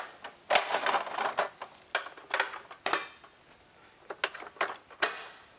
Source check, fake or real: real